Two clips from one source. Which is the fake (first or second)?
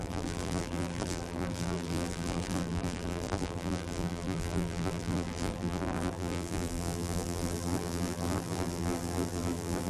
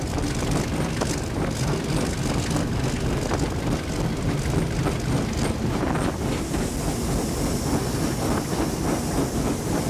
first